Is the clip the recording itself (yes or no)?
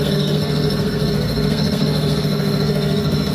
no